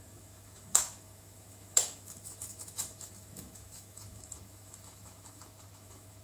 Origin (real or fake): fake